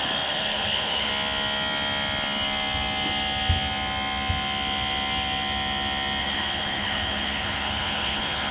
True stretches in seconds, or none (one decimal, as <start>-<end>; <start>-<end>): 1.1-6.2